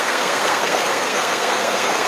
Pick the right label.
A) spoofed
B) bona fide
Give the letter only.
A